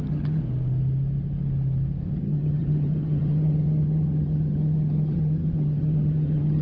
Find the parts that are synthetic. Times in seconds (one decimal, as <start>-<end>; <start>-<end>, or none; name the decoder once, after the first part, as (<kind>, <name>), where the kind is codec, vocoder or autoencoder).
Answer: 0.0-0.4 (vocoder, HiFi-GAN); 2.2-6.6